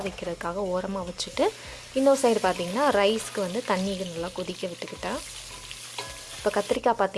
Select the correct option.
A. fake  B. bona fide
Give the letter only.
B